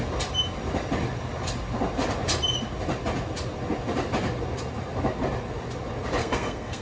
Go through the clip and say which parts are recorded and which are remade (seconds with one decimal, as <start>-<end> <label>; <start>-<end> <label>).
0.0-6.2 recorded; 6.2-6.8 remade

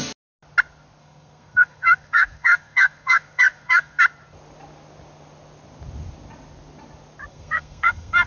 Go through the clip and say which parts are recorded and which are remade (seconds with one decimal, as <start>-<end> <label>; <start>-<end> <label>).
0.0-1.0 recorded; 1.0-4.0 remade; 4.0-7.3 recorded; 7.3-8.3 remade

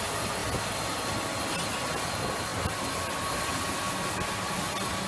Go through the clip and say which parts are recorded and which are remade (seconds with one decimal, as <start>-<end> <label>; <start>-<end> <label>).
0.0-5.1 recorded

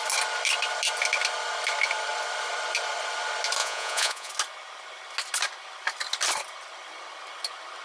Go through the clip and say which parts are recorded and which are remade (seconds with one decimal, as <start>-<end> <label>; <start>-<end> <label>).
0.0-3.6 recorded; 3.6-4.3 remade; 4.3-7.8 recorded

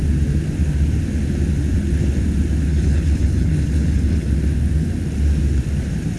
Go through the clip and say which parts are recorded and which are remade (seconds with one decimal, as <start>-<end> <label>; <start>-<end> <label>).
0.0-2.7 recorded; 2.7-4.3 remade; 4.3-6.2 recorded